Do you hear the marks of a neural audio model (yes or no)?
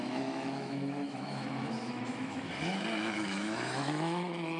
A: yes